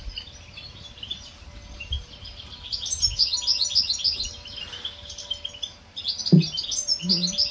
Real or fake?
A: real